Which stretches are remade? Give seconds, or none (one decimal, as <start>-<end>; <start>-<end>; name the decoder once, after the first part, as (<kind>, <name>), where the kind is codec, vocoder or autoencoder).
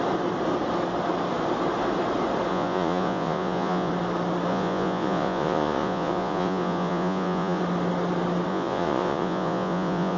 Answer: 2.5-3.9 (vocoder, Vocos); 4.5-7.6; 8.5-10.2